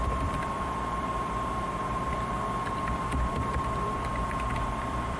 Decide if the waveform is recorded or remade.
remade